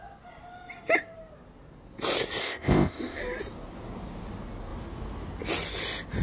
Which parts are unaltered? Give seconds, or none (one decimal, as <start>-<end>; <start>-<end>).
0.0-2.4; 3.2-6.2